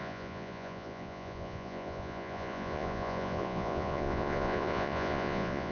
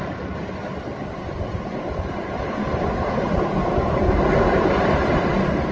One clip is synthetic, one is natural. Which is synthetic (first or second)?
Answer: first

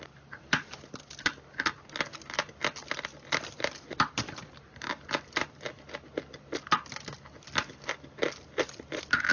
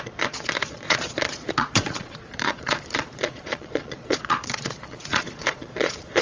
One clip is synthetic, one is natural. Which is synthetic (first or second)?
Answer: second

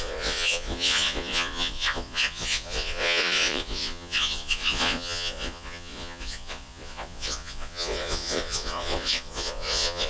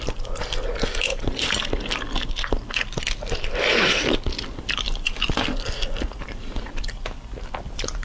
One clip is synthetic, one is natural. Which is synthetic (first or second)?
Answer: first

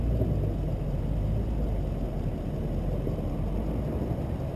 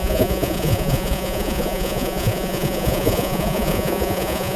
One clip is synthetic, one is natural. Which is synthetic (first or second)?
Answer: second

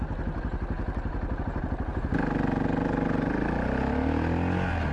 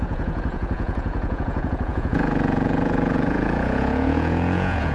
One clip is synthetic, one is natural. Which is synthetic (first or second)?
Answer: second